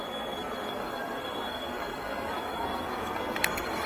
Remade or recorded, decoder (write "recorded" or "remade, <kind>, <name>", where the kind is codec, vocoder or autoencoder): remade, codec, SNAC